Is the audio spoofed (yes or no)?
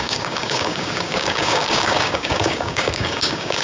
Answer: yes